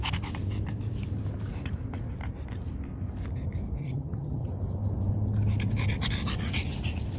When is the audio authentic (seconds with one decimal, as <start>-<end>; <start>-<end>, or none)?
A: 0.0-3.8; 4.5-7.2